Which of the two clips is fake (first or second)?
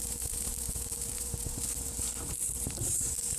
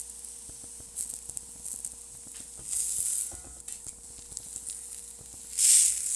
first